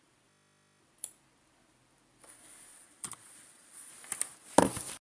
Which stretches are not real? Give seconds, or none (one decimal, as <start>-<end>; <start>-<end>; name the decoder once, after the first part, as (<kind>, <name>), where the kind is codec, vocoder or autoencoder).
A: 2.7-3.9 (vocoder, Vocos)